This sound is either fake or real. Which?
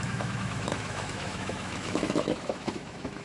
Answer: fake